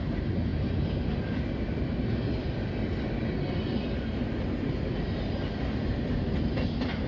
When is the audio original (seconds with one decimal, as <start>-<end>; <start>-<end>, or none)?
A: 0.0-7.1